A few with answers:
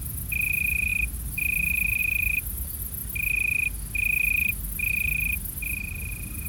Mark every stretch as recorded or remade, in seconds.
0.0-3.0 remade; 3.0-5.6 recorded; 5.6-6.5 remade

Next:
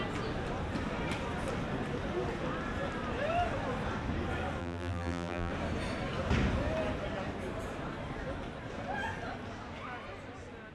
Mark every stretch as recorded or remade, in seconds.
0.0-4.6 recorded; 4.6-5.5 remade; 5.5-10.7 recorded

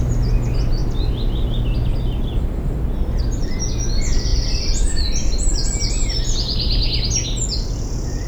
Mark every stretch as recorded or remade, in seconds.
0.0-8.3 recorded

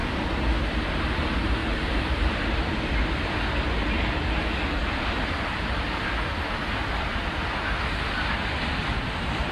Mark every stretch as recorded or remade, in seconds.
0.0-1.6 recorded; 1.6-2.8 remade; 2.8-9.5 recorded

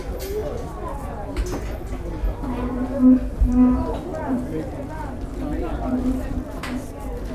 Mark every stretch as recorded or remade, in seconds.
0.0-4.1 recorded; 4.1-6.3 remade; 6.3-7.3 recorded

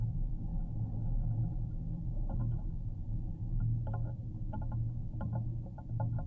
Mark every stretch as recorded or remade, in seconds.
0.0-0.5 remade; 0.5-1.7 recorded; 1.7-2.4 remade; 2.4-6.3 recorded

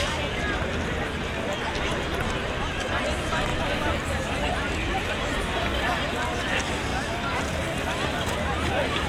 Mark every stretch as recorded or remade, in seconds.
0.0-9.1 recorded